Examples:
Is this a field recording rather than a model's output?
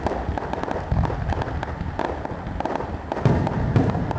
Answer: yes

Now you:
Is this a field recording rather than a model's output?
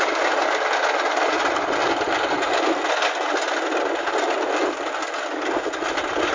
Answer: yes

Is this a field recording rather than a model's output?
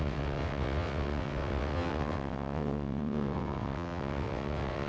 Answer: no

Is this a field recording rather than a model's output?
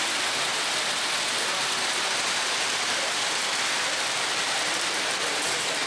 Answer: yes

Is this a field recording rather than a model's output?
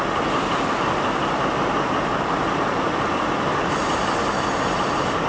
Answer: yes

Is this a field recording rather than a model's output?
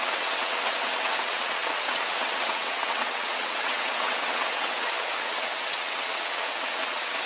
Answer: no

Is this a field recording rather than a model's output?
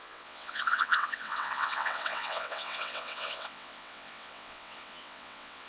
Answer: no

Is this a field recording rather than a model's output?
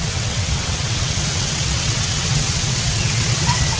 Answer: no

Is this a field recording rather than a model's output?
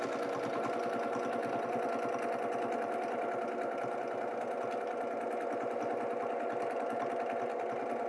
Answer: yes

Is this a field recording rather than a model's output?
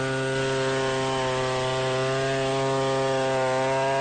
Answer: yes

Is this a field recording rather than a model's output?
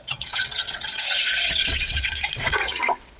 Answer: no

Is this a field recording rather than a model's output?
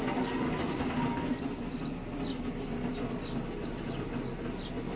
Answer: yes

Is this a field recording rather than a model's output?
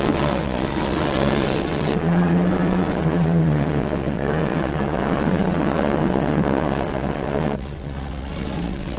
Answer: no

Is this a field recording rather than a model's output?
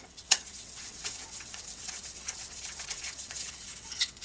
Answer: no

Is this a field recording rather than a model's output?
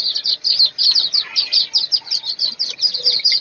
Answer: yes